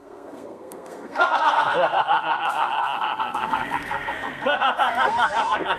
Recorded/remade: remade